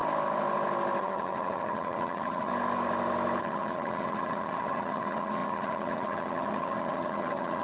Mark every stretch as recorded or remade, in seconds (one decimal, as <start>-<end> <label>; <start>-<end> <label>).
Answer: 0.0-1.0 recorded; 1.0-2.5 remade; 2.5-3.4 recorded; 3.4-7.6 remade